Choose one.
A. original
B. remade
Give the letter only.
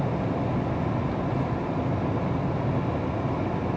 A